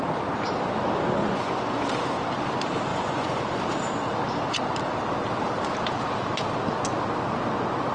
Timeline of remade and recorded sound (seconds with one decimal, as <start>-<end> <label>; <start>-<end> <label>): 0.0-1.2 recorded; 1.2-1.9 remade; 1.9-2.9 recorded; 2.9-3.6 remade; 3.6-7.9 recorded